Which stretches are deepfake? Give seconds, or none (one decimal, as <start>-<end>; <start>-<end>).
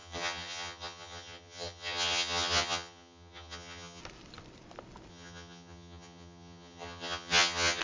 0.0-4.0; 5.1-7.8